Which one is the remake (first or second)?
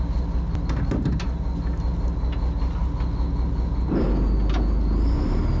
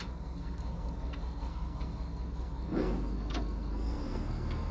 second